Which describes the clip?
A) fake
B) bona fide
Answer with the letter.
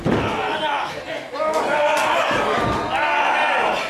B